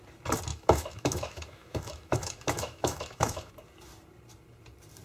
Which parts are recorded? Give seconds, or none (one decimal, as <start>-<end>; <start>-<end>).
0.0-0.5; 3.5-5.0